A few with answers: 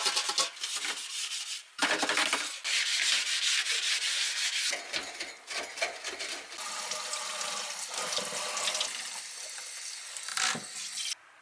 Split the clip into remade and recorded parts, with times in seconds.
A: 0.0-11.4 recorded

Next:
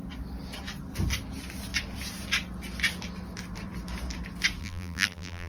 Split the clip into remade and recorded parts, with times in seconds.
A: 0.0-4.6 recorded; 4.6-5.5 remade

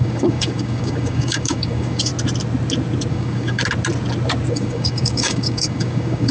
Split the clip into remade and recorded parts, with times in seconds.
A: 0.0-2.1 remade; 2.1-3.1 recorded; 3.1-3.6 remade; 3.6-4.5 recorded; 4.5-6.3 remade

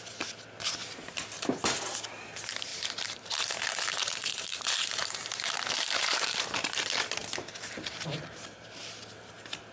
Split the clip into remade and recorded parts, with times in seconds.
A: 0.0-0.8 recorded; 0.8-1.6 remade; 1.6-2.7 recorded; 2.7-6.8 remade; 6.8-9.7 recorded

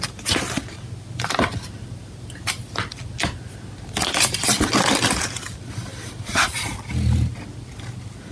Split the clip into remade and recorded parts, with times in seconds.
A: 0.0-5.9 recorded; 5.9-6.8 remade; 6.8-8.3 recorded

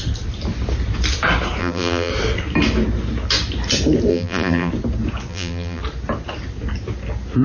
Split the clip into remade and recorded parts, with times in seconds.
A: 0.0-1.6 recorded; 1.6-2.1 remade; 2.1-4.1 recorded; 4.1-4.7 remade; 4.7-5.3 recorded; 5.3-5.8 remade; 5.8-7.4 recorded